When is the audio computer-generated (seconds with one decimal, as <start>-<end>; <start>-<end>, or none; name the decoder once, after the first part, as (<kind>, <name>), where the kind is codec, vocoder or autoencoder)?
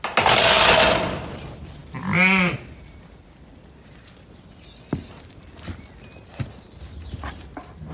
none